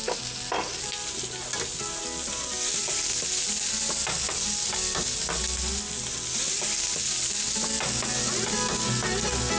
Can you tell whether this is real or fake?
real